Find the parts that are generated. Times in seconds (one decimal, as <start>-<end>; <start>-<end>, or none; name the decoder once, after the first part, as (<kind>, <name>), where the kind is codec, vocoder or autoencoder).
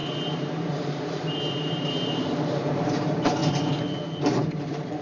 0.0-3.4 (vocoder, BigVGAN v2); 4.2-5.0